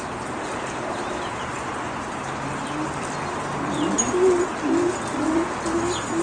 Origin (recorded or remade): recorded